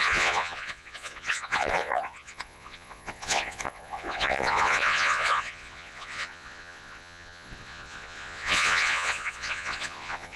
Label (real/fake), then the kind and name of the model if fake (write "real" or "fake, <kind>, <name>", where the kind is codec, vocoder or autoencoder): fake, vocoder, Vocos